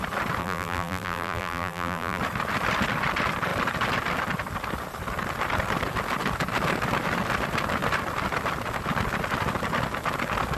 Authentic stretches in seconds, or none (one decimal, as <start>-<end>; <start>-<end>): 0.0-0.4; 2.2-10.6